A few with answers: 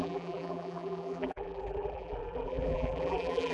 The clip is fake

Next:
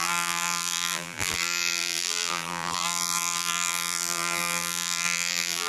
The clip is fake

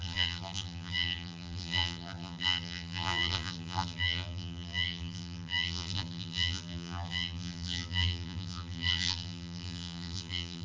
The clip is fake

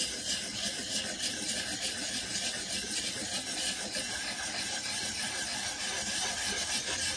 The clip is fake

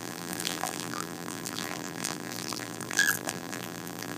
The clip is fake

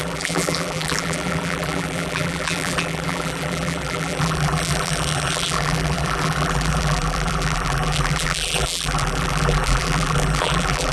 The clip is fake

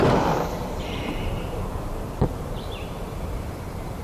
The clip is fake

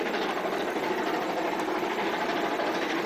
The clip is real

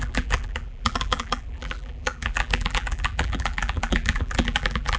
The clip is fake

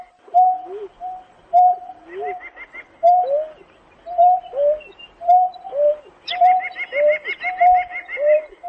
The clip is real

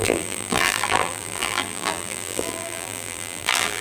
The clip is fake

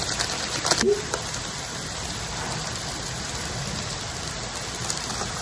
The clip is fake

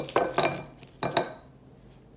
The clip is real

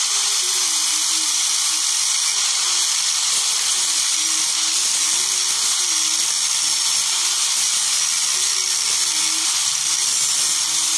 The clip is real